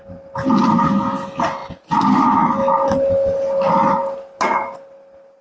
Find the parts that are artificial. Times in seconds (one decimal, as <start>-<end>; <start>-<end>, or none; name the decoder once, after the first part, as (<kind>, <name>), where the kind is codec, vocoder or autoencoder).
none